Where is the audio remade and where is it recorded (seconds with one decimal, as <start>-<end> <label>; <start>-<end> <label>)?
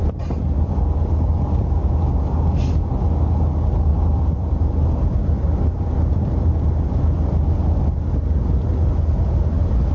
0.0-3.9 recorded; 3.9-6.5 remade; 6.5-9.9 recorded